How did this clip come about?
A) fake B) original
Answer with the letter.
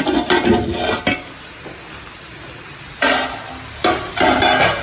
B